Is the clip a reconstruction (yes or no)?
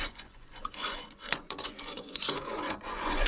yes